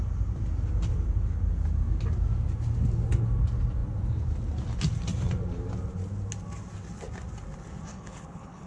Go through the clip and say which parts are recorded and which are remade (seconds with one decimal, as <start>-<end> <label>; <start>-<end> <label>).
0.0-7.9 recorded; 7.9-8.7 remade